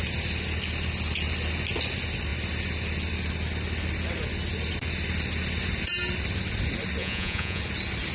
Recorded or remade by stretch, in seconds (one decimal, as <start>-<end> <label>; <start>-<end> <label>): 0.0-7.0 recorded; 7.0-7.6 remade; 7.6-8.1 recorded